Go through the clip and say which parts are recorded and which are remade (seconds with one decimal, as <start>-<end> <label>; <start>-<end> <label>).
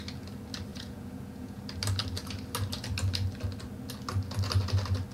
0.0-0.7 recorded; 0.7-1.6 remade; 1.6-5.1 recorded